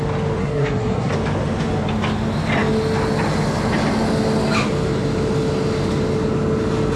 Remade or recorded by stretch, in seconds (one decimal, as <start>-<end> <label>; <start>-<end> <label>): 0.0-0.4 recorded; 0.4-1.1 remade; 1.1-7.0 recorded